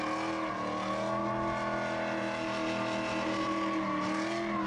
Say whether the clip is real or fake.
real